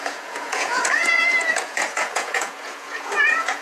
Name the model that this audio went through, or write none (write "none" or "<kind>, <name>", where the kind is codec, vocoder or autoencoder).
vocoder, Vocos